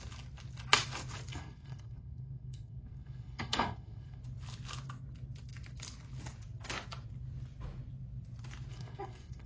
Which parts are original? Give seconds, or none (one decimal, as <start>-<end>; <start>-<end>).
0.0-1.3; 4.2-8.7